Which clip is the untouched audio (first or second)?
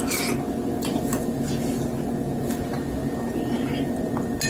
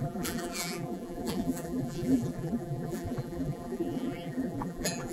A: first